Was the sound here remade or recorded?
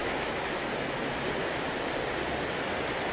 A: recorded